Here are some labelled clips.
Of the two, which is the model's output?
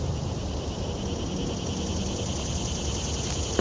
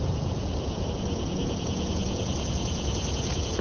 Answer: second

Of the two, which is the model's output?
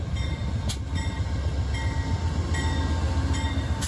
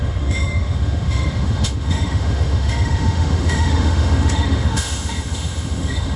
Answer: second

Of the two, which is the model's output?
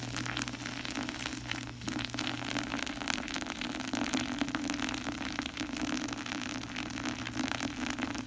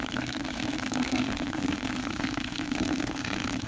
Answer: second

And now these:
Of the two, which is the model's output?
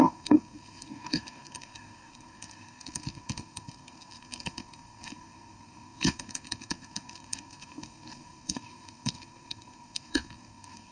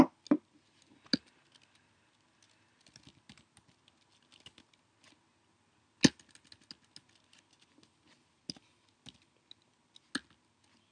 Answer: first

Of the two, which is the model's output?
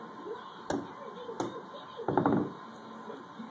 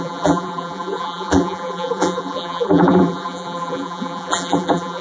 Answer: second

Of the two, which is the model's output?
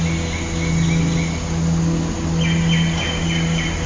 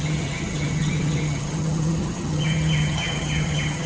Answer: second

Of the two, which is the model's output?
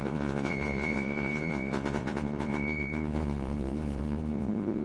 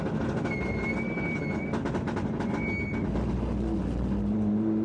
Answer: first